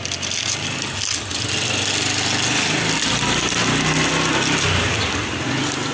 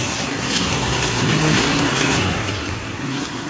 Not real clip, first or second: second